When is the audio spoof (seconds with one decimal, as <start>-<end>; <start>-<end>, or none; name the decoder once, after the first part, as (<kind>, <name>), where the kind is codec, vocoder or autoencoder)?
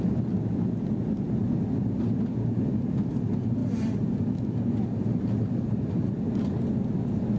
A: none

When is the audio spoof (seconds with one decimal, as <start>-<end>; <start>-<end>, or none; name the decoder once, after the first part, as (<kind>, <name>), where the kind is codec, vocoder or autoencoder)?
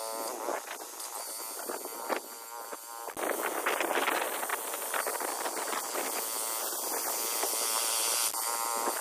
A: none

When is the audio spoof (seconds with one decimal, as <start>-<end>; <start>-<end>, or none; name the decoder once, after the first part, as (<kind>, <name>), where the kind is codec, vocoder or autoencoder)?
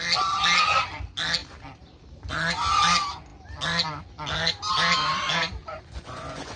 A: 5.6-6.6 (vocoder, Vocos)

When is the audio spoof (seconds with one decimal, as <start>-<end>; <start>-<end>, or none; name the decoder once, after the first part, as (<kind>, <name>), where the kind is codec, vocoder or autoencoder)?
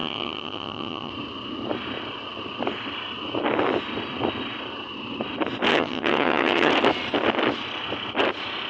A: 0.0-1.1 (vocoder, HiFi-GAN); 5.7-6.7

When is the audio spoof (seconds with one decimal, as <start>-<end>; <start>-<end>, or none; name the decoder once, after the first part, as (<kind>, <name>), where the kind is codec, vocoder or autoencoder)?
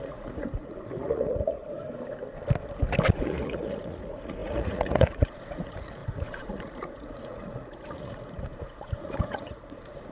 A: 0.0-1.6 (vocoder, Vocos); 3.1-10.1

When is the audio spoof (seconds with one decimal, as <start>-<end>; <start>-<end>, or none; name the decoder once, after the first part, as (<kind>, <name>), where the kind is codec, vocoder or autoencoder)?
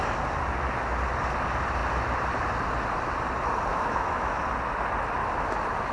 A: 3.7-4.4 (autoencoder, DAC-VAE)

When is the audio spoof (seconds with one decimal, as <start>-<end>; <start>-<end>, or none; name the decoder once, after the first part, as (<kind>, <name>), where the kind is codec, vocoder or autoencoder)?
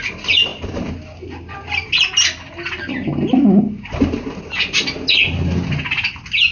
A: none